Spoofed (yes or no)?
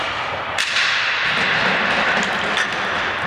no